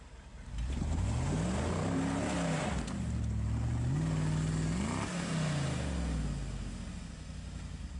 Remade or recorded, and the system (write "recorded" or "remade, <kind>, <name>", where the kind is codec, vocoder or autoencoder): recorded